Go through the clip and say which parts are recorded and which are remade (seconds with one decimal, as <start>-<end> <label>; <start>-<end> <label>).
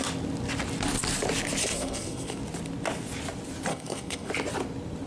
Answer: 0.0-1.6 recorded; 1.6-2.4 remade; 2.4-3.7 recorded; 3.7-4.3 remade; 4.3-5.1 recorded